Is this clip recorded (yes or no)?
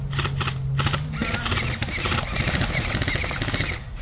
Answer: yes